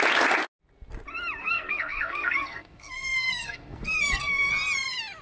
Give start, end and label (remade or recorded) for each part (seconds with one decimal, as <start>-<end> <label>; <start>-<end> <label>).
0.0-1.4 recorded; 1.4-4.5 remade; 4.5-5.2 recorded